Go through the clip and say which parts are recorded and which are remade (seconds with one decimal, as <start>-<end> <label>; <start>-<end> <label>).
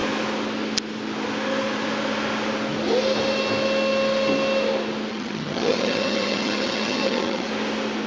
0.0-5.1 recorded; 5.1-7.5 remade; 7.5-8.1 recorded